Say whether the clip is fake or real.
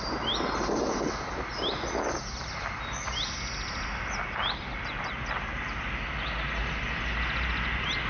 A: real